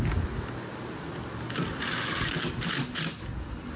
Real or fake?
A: real